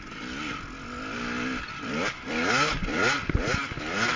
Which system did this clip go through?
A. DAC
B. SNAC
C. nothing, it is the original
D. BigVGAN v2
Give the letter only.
C